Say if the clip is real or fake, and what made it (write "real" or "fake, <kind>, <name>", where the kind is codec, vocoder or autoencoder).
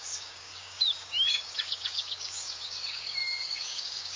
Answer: fake, codec, DAC